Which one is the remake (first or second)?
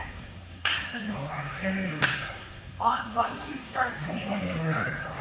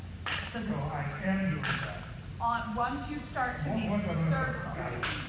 first